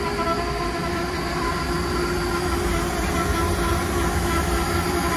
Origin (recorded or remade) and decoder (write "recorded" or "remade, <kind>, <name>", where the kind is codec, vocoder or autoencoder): recorded